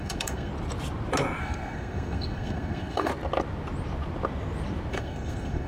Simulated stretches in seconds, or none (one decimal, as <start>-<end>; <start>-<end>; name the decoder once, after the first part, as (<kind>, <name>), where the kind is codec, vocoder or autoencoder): 0.0-0.5 (codec, SNAC); 1.4-3.1; 4.9-5.7